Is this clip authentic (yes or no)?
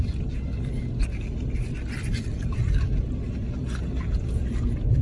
yes